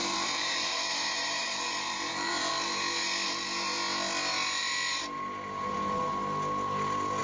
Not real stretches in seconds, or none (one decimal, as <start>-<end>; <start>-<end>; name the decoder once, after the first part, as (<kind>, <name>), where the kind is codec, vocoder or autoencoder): 0.0-2.5 (vocoder, BigVGAN v2)